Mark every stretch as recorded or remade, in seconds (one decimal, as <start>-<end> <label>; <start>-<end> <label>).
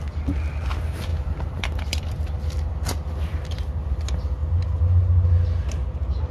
0.0-1.1 recorded; 1.1-2.8 remade; 2.8-6.3 recorded